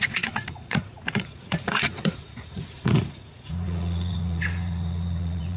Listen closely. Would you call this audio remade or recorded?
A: remade